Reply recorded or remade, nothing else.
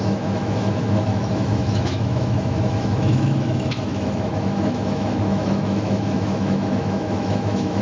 remade